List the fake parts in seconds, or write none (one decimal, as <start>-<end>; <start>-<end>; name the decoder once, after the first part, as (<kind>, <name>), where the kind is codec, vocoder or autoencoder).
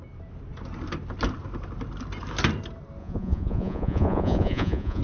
3.0-5.0 (vocoder, Vocos)